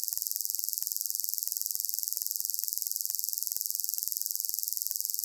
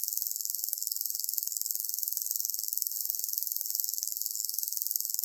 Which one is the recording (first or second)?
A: first